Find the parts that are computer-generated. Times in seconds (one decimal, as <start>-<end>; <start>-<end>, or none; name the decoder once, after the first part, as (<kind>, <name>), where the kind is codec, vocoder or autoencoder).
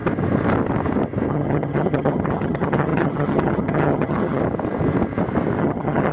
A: 1.3-4.4 (vocoder, HiFi-GAN); 5.6-6.1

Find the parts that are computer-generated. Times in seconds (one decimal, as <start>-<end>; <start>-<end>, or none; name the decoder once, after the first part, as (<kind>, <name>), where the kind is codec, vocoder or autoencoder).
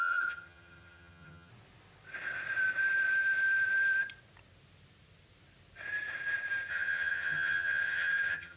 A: 0.0-1.5 (vocoder, HiFi-GAN); 6.7-8.6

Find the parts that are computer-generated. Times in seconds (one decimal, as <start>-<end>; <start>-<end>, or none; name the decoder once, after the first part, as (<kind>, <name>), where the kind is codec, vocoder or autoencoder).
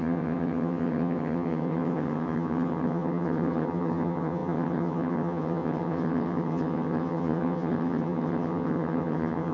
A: 0.0-9.5 (vocoder, HiFi-GAN)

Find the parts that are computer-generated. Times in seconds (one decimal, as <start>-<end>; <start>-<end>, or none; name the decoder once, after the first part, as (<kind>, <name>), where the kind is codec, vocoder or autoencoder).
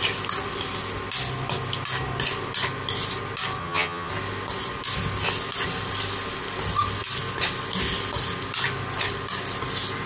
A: 3.6-4.1 (vocoder, HiFi-GAN)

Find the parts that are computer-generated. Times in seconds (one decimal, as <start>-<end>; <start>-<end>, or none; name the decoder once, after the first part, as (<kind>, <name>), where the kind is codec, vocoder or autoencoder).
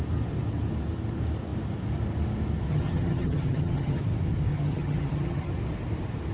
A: 2.7-4.0 (vocoder, HiFi-GAN); 4.5-5.5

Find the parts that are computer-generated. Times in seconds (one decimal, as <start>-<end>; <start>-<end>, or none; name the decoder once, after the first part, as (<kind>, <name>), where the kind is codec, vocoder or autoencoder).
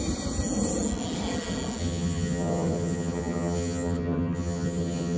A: 1.8-5.2 (vocoder, HiFi-GAN)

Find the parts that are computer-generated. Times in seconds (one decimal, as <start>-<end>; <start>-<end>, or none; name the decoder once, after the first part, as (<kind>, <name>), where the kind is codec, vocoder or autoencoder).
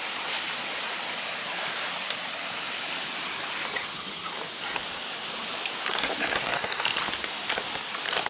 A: 3.7-4.3 (vocoder, HiFi-GAN)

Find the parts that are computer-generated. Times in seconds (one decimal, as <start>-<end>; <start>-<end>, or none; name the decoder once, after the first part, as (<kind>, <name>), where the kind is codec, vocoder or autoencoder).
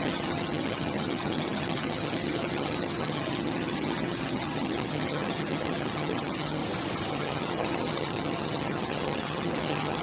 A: 0.0-6.6 (vocoder, HiFi-GAN); 7.1-10.0